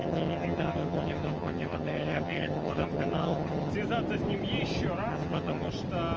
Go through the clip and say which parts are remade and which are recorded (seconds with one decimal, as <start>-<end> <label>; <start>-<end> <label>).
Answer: 0.0-3.7 remade; 3.7-5.1 recorded; 5.1-5.7 remade; 5.7-6.2 recorded